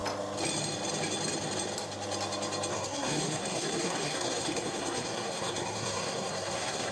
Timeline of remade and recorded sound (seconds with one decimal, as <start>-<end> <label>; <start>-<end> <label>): 0.0-2.7 recorded; 2.7-6.9 remade